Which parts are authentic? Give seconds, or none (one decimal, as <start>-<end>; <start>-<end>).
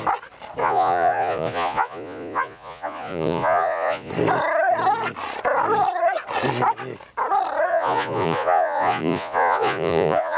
0.0-0.6; 4.1-7.7